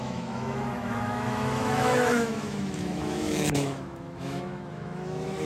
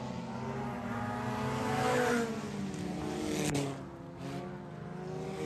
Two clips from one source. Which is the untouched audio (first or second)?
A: second